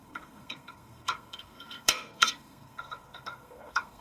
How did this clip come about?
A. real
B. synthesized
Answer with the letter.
B